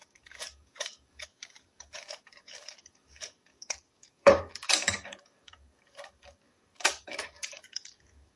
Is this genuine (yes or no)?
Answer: no